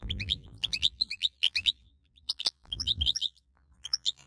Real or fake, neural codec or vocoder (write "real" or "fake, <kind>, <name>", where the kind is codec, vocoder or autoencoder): fake, vocoder, BigVGAN v2